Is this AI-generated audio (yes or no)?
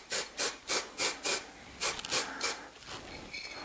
no